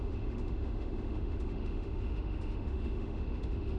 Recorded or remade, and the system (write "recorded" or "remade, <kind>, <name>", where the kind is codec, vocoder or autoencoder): remade, autoencoder, DAC-VAE